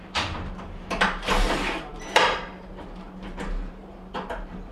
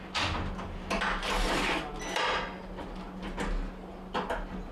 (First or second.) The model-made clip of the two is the first